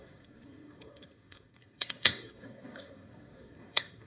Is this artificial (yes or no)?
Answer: yes